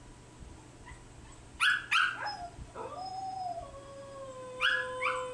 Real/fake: real